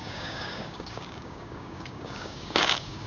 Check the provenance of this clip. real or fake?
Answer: fake